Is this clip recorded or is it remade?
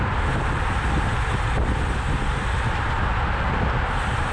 recorded